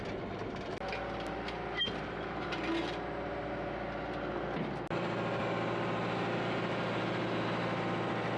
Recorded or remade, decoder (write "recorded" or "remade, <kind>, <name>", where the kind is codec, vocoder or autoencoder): recorded